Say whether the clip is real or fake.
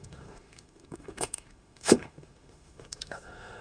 fake